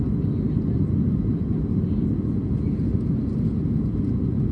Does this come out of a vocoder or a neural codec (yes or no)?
no